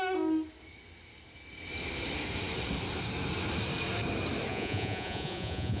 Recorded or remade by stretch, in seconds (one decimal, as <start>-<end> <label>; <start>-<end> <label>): 0.0-4.5 recorded; 4.5-5.8 remade